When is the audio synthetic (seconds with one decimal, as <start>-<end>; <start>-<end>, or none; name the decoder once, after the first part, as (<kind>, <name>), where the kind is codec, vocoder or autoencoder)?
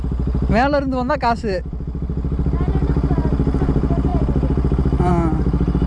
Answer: none